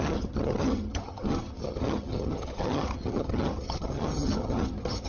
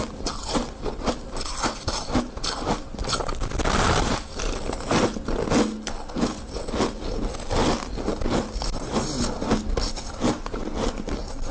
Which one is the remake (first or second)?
first